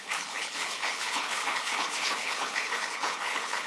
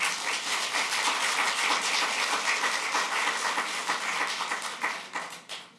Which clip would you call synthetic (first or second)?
first